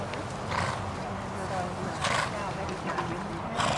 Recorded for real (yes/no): yes